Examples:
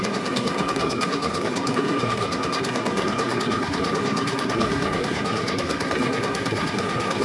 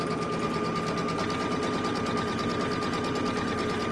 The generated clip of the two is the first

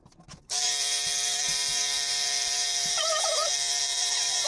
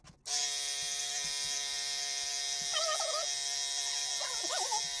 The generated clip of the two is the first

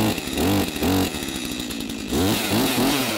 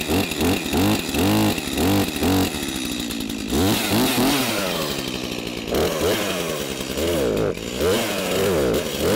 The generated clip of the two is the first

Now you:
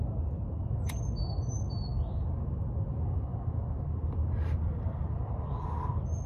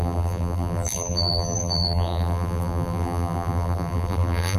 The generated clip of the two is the second